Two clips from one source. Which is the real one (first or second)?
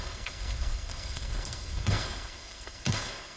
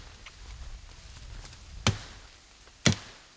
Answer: second